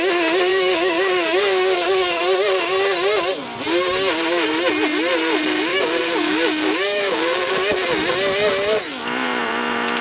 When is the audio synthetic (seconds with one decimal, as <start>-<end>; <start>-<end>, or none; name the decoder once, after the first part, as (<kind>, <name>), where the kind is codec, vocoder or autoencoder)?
0.5-2.2 (codec, DAC); 5.7-7.5